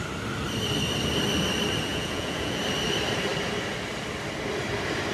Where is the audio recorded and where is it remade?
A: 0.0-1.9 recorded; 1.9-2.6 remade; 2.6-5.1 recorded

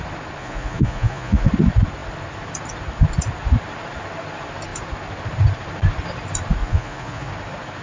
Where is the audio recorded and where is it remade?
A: 0.0-0.4 recorded; 0.4-1.5 remade; 1.5-6.6 recorded; 6.6-7.3 remade; 7.3-7.8 recorded

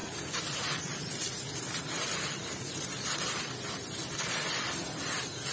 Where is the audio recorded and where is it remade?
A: 0.0-5.5 recorded